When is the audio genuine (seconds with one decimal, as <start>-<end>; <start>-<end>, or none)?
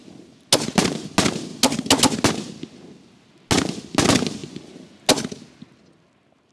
0.0-4.4; 5.0-6.5